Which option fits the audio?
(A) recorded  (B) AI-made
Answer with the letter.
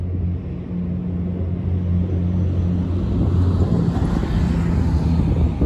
A